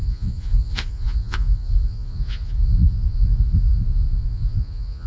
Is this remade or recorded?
remade